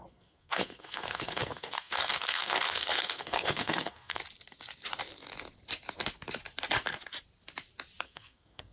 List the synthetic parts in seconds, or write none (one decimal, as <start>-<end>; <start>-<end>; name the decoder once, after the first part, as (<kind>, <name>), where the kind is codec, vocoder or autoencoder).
0.0-4.2 (codec, SNAC); 8.0-8.7